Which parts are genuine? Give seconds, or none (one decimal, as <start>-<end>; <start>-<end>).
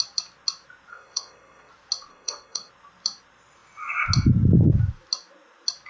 0.0-0.9; 1.7-2.1; 2.7-5.9